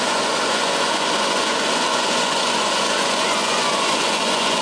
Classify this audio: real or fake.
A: fake